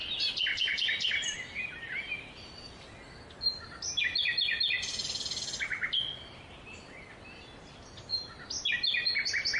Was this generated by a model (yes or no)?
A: no